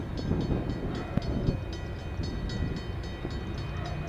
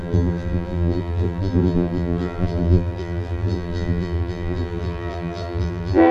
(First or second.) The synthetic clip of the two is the second